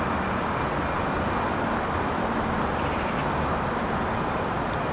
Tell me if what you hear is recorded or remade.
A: recorded